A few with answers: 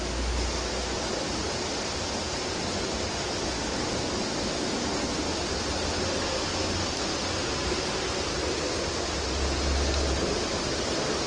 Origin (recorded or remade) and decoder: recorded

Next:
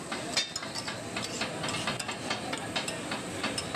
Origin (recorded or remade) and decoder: recorded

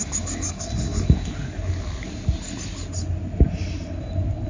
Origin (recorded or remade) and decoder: recorded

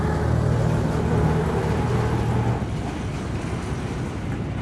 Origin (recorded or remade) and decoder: recorded